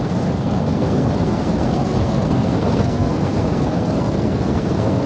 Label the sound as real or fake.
fake